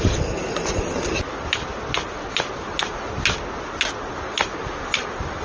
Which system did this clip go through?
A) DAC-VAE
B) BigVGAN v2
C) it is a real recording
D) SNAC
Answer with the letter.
C